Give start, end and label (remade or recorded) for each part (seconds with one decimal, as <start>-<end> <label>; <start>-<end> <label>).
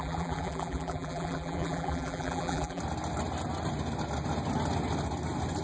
0.0-2.8 remade; 2.8-5.6 recorded